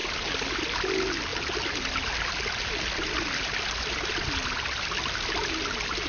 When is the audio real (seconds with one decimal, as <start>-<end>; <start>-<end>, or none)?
0.0-6.1